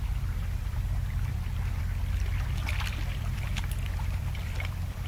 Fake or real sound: fake